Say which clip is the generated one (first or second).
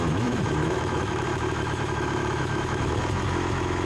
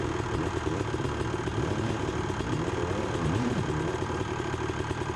first